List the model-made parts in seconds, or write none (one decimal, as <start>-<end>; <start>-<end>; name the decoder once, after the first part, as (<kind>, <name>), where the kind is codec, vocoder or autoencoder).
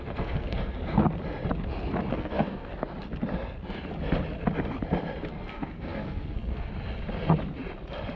0.0-0.8 (codec, SNAC); 2.1-2.7; 5.3-6.7